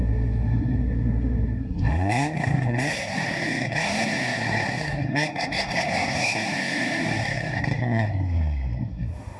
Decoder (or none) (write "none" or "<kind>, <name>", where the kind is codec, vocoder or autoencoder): codec, SNAC